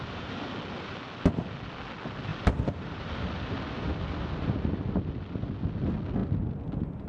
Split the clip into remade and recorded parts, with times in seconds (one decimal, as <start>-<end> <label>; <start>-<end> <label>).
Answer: 0.0-7.1 recorded